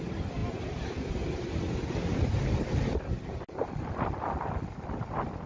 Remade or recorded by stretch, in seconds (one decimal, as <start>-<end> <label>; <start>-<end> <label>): 0.0-5.5 recorded